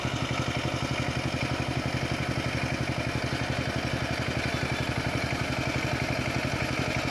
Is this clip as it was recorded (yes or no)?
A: yes